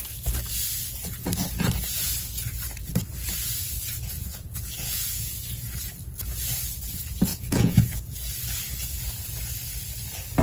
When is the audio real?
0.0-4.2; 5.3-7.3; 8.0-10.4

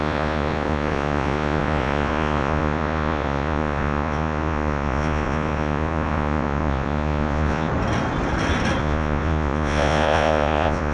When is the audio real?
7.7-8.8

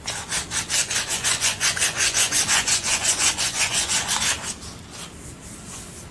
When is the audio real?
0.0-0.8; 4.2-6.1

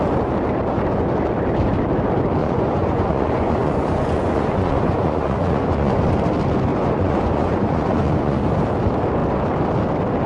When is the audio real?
0.0-2.4; 6.1-6.7; 8.5-10.3

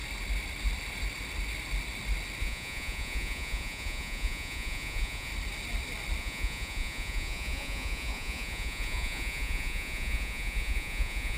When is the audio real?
0.0-2.4; 5.3-6.2

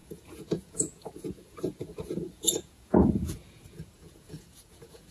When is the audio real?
none

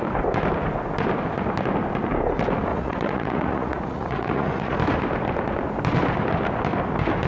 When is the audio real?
0.0-2.7; 4.8-7.3

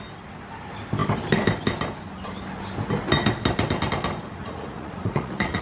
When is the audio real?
0.0-4.4